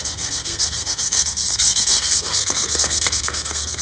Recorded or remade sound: remade